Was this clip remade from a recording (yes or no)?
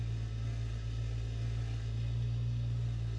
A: no